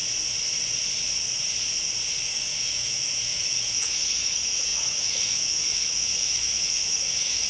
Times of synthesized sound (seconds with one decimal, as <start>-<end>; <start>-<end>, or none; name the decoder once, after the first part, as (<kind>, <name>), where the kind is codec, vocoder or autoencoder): 2.2-7.5 (autoencoder, DAC-VAE)